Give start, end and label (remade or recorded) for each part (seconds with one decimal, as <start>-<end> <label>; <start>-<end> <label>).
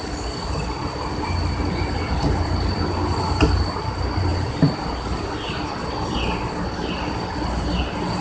0.0-8.2 recorded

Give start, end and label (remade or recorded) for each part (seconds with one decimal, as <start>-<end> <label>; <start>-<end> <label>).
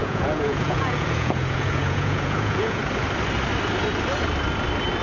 0.0-2.8 remade; 2.8-5.0 recorded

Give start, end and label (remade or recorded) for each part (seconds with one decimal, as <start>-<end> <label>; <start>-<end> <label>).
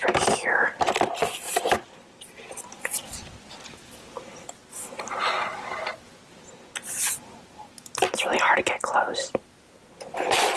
0.0-10.6 recorded